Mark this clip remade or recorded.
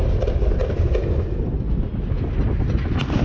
recorded